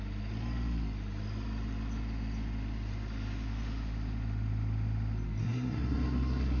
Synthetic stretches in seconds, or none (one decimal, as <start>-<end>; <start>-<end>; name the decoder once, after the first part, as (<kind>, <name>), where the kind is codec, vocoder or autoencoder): 5.4-6.6 (codec, SNAC)